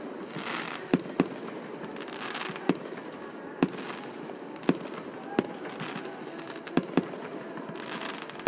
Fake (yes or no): no